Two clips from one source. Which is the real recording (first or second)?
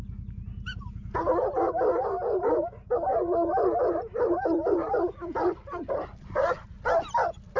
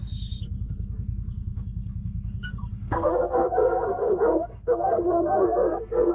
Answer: first